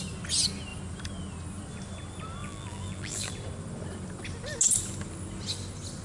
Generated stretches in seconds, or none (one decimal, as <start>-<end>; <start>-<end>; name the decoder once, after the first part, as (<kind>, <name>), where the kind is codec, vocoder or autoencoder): 2.4-3.3 (vocoder, BigVGAN v2)